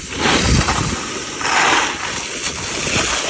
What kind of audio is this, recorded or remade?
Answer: recorded